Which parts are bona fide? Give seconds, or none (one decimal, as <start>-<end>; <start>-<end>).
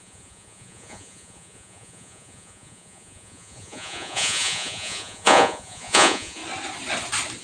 6.4-7.4